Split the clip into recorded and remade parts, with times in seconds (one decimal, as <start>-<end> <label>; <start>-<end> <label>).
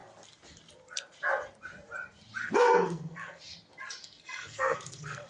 0.0-2.4 recorded; 2.4-3.4 remade; 3.4-4.0 recorded; 4.0-5.3 remade